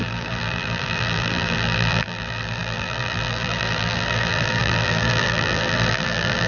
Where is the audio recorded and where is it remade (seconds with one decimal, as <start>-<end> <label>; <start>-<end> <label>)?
0.0-6.5 remade